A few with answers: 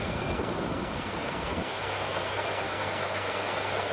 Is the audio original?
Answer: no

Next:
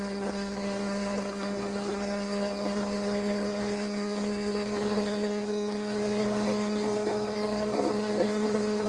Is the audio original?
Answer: no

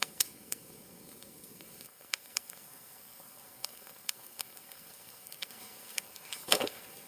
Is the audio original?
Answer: no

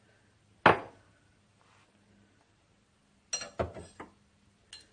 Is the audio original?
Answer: yes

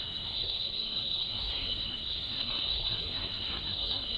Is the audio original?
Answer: no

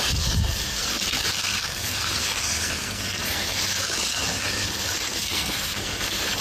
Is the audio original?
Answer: no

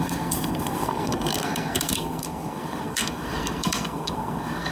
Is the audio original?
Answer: no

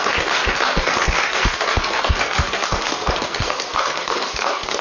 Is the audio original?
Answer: no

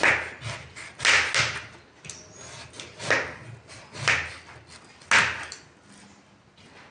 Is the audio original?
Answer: yes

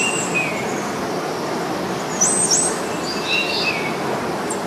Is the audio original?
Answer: yes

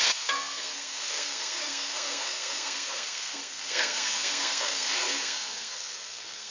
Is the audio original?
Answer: no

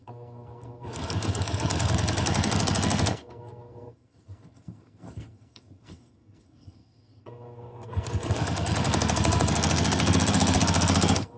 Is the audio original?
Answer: no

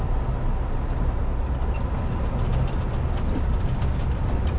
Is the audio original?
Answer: yes